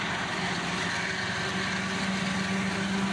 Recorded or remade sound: recorded